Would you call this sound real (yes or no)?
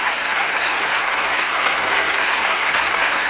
no